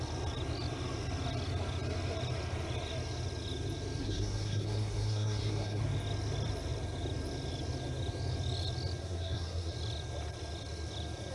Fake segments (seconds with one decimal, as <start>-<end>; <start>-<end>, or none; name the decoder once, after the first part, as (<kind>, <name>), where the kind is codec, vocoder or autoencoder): 4.0-5.8 (codec, SNAC); 9.0-9.7